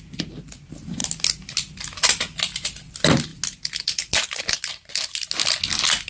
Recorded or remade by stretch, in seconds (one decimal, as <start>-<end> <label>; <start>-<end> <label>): 0.0-6.1 recorded